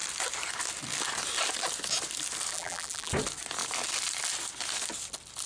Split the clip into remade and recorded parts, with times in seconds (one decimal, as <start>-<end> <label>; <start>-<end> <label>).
0.0-2.5 recorded; 2.5-3.1 remade; 3.1-5.5 recorded